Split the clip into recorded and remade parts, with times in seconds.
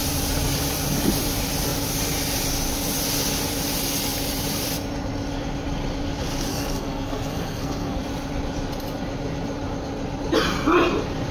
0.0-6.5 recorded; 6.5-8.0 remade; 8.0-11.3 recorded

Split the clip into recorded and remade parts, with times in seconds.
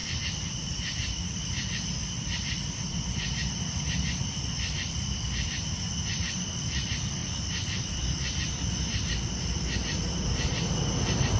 0.0-11.4 remade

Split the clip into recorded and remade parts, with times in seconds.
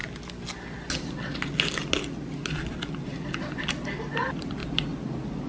0.0-5.5 recorded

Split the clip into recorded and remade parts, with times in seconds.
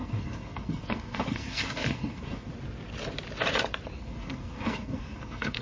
0.0-2.5 remade; 2.5-4.0 recorded; 4.0-5.6 remade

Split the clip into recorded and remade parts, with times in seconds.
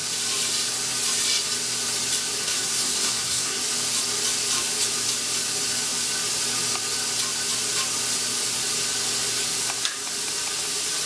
0.0-2.4 recorded; 2.4-3.6 remade; 3.6-11.1 recorded